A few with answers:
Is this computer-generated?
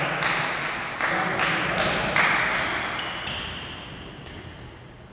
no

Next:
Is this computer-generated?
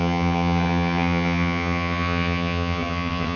yes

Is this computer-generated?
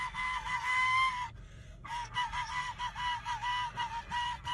yes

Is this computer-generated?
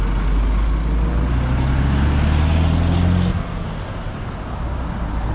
no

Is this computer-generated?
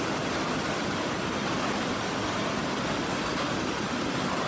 no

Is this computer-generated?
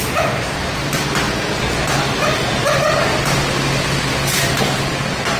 no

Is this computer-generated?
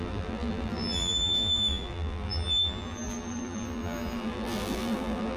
yes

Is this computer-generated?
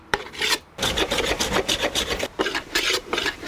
yes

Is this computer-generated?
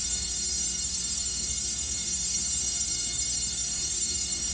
yes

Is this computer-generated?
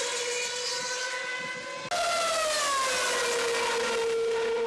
no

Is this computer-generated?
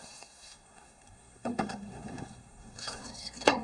yes